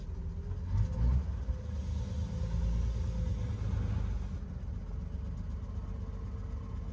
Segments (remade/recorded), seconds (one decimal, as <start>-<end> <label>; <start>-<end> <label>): 0.0-6.9 recorded